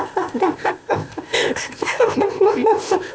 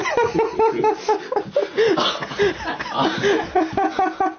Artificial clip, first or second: first